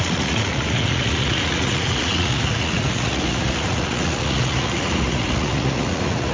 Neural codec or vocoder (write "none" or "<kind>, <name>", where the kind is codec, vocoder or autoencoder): vocoder, Vocos